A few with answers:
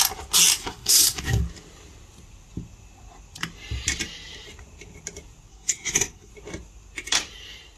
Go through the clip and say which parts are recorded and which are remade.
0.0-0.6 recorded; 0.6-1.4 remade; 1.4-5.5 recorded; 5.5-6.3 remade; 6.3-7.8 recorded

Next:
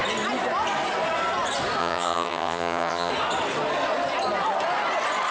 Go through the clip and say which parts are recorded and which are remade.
0.0-1.8 recorded; 1.8-3.1 remade; 3.1-5.3 recorded

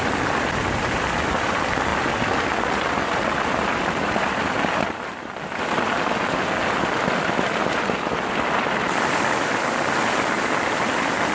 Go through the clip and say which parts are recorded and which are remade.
0.0-11.3 recorded

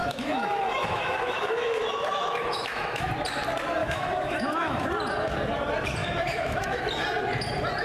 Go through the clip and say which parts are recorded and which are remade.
0.0-3.1 remade; 3.1-3.8 recorded; 3.8-4.9 remade; 4.9-6.0 recorded; 6.0-6.8 remade; 6.8-7.8 recorded

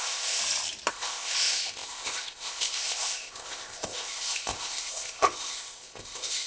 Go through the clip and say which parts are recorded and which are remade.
0.0-0.4 remade; 0.4-0.9 recorded; 0.9-6.5 remade

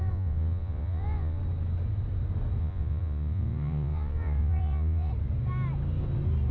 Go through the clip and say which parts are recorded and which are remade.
0.0-1.4 remade; 1.4-2.6 recorded; 2.6-5.1 remade; 5.1-6.5 recorded